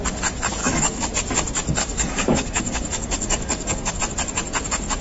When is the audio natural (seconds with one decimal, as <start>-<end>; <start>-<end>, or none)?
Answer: 0.0-0.6; 1.1-1.8; 4.0-5.0